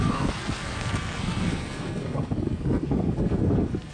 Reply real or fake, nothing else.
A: fake